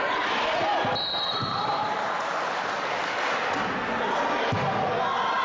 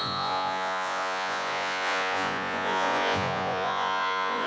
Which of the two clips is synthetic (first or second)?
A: second